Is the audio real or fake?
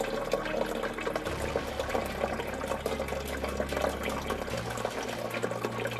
real